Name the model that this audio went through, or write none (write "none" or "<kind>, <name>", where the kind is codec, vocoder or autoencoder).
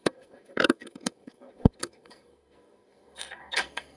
codec, SNAC